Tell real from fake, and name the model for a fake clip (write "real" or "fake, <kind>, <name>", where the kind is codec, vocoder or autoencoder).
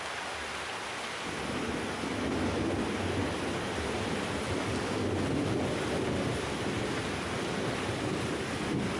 real